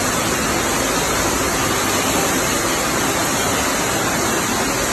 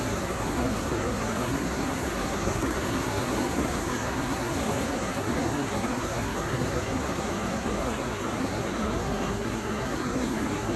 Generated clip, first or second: second